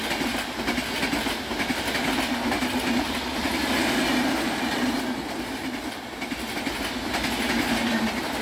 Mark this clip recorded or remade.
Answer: recorded